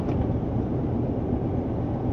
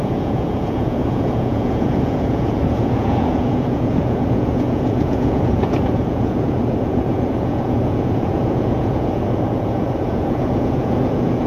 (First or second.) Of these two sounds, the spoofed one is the second